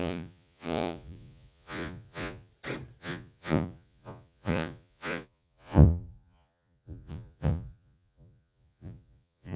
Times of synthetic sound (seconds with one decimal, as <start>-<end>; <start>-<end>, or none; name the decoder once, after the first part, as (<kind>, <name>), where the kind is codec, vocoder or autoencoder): 0.0-2.5 (vocoder, Vocos); 3.0-9.6